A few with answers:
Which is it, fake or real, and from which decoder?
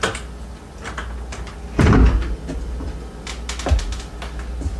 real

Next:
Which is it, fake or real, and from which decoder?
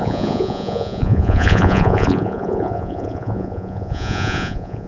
fake, vocoder, Vocos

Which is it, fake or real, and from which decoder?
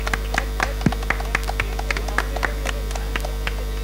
real